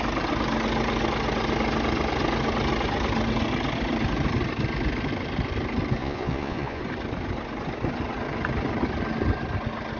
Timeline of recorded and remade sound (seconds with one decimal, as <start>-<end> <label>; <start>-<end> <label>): 0.0-6.0 recorded; 6.0-6.8 remade; 6.8-10.0 recorded